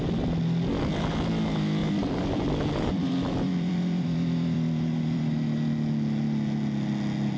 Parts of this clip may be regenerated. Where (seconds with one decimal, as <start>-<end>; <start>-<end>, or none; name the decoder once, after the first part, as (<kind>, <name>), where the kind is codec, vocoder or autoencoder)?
1.8-5.7 (vocoder, BigVGAN v2)